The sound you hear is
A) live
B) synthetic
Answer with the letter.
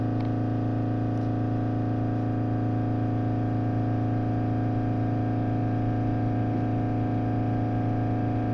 A